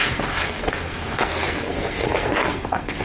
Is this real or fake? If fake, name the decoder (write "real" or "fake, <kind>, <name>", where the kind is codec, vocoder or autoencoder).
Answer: fake, codec, SNAC